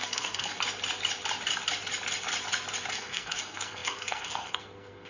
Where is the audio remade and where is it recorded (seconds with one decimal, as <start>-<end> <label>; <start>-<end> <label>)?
0.0-0.5 remade; 0.5-2.9 recorded; 2.9-5.1 remade